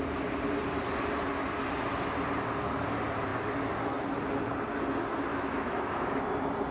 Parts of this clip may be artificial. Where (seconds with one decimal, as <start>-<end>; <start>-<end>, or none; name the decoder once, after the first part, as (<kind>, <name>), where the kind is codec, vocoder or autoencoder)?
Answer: 5.3-6.2 (autoencoder, DAC-VAE)